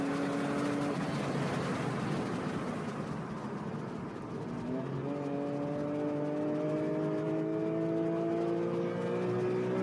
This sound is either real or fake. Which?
real